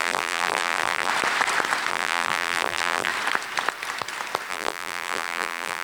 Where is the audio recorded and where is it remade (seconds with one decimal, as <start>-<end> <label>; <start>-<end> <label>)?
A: 0.0-1.1 remade; 1.1-1.9 recorded; 1.9-3.1 remade; 3.1-4.5 recorded; 4.5-5.8 remade